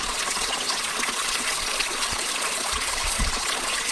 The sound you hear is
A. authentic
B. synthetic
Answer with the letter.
B